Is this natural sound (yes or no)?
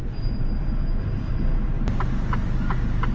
yes